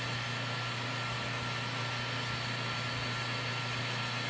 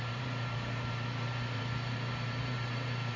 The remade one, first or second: second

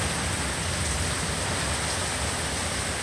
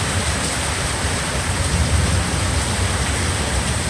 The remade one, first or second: second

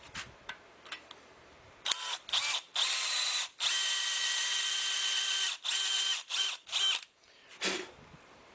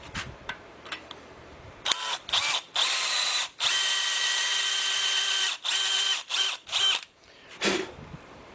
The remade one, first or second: second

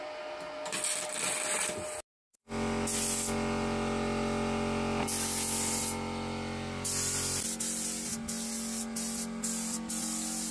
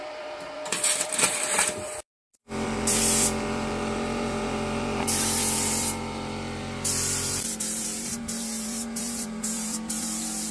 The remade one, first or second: second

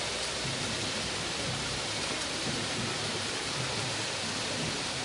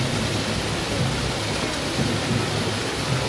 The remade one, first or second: first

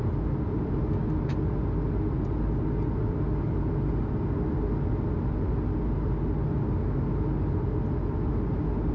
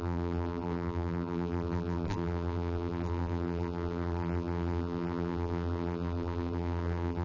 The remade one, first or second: second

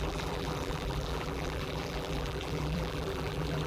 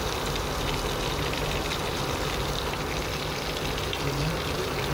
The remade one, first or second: first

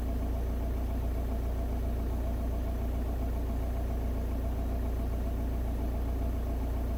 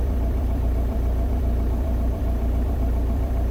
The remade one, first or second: second